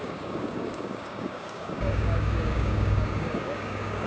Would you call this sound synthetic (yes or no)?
yes